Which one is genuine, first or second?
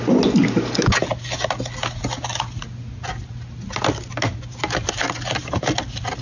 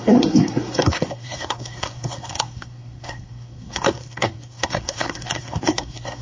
first